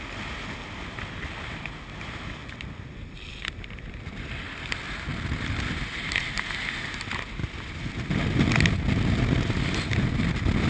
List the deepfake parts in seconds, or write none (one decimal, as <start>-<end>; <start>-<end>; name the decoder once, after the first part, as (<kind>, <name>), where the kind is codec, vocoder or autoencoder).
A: 2.4-3.6 (vocoder, BigVGAN v2); 7.4-7.9